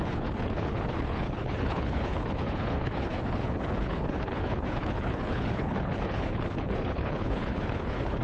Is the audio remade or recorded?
remade